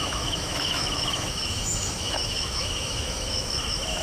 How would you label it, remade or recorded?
remade